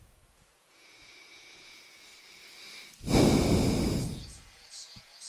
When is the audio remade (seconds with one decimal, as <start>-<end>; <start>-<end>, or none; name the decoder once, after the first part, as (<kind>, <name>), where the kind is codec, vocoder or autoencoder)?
0.0-2.1 (vocoder, Vocos); 4.0-5.3